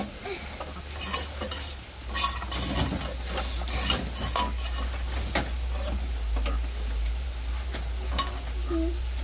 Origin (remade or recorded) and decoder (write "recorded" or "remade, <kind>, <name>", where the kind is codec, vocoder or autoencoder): recorded